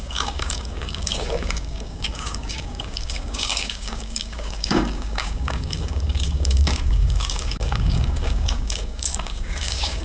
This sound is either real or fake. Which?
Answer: fake